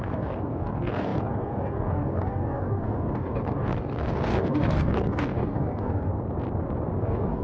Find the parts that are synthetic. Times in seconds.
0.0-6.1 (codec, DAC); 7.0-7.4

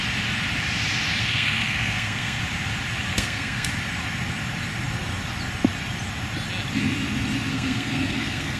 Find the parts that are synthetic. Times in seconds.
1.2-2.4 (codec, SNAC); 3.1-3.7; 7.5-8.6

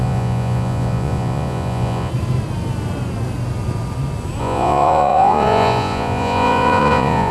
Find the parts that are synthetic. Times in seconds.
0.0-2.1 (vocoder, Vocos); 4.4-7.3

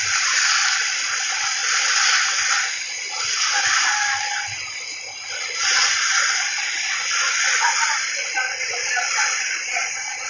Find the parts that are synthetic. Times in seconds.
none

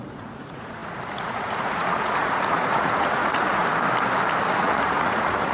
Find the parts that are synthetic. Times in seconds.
0.0-3.6 (vocoder, Vocos); 4.5-5.5